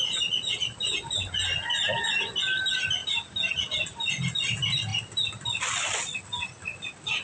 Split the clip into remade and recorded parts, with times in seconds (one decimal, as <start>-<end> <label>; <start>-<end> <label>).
0.0-7.2 recorded